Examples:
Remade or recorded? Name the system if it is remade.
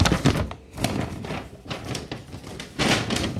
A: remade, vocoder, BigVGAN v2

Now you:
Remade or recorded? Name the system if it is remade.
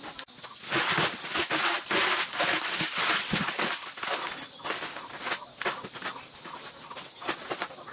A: recorded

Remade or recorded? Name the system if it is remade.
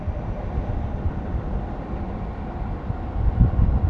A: recorded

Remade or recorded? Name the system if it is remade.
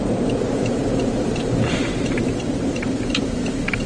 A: remade, vocoder, BigVGAN v2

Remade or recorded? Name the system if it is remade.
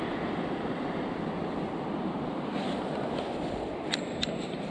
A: remade, vocoder, BigVGAN v2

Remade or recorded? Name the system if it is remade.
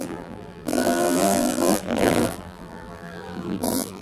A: remade, vocoder, BigVGAN v2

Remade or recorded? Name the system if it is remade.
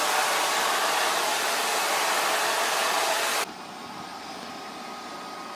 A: recorded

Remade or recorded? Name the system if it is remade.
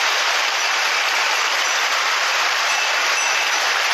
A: remade, vocoder, BigVGAN v2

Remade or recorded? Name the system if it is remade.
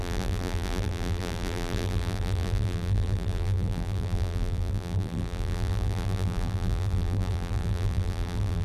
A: remade, vocoder, BigVGAN v2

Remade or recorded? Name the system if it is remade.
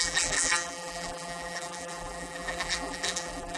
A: remade, vocoder, BigVGAN v2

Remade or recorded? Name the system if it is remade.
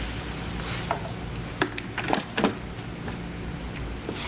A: recorded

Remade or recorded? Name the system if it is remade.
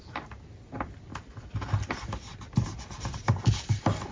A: remade, vocoder, BigVGAN v2